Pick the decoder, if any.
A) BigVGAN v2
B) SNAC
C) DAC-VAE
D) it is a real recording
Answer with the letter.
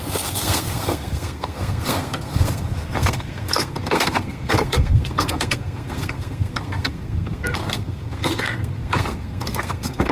B